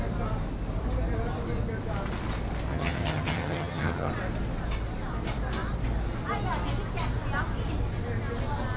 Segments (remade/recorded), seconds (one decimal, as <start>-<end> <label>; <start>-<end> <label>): 0.0-2.7 recorded; 2.7-4.1 remade; 4.1-8.8 recorded